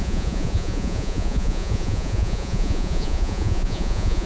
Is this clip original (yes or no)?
no